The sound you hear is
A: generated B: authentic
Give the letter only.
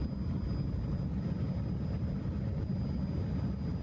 B